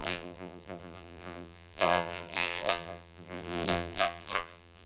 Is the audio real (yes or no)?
no